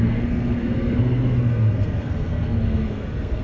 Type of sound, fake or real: fake